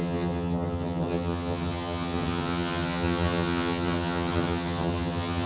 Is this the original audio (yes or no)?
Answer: no